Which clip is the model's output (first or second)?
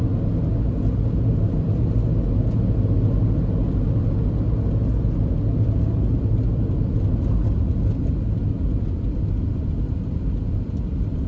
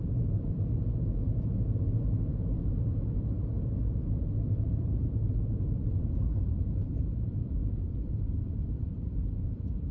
second